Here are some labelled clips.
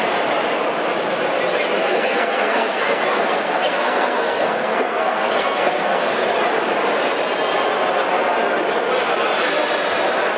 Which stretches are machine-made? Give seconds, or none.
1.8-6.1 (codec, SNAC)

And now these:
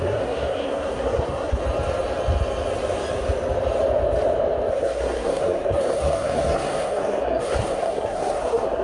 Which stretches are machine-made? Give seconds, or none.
0.0-1.6 (codec, SNAC); 4.7-8.8

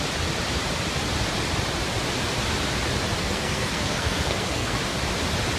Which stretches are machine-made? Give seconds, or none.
3.2-4.8 (codec, SNAC)